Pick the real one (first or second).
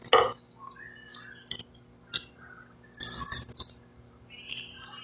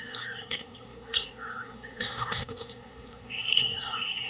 first